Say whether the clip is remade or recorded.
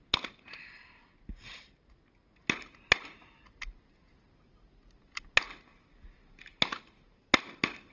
recorded